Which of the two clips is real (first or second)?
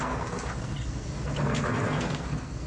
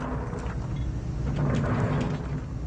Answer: second